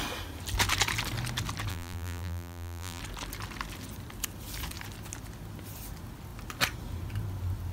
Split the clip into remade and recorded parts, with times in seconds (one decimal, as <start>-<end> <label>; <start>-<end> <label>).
0.0-1.7 recorded; 1.7-3.0 remade; 3.0-7.7 recorded